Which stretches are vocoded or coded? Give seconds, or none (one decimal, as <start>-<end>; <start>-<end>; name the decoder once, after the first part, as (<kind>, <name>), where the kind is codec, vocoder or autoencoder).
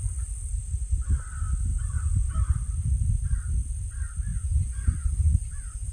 4.3-5.9 (vocoder, Vocos)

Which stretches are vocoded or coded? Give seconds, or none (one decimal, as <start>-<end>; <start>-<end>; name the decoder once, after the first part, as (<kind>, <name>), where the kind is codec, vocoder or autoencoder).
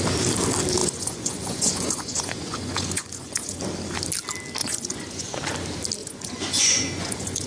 0.8-3.6 (vocoder, Vocos); 4.6-5.4; 6.0-7.5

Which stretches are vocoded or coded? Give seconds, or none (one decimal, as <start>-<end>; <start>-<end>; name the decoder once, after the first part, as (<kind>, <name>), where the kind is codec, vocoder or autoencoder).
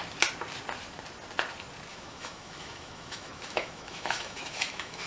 1.9-5.1 (autoencoder, DAC-VAE)